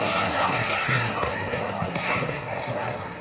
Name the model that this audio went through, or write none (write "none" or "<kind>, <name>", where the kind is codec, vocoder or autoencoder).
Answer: codec, SNAC